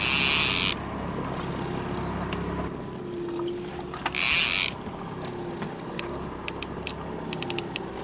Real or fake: real